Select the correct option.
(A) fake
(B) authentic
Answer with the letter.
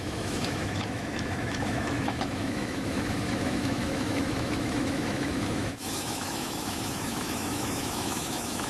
A